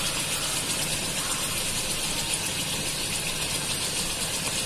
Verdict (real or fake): real